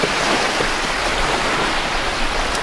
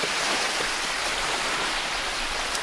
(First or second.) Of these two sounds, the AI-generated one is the second